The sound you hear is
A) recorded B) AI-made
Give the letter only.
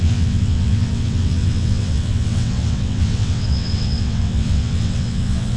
B